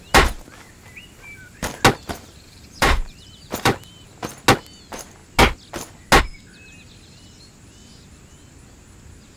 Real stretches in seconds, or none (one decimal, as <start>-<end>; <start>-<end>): 0.0-2.0; 4.1-9.4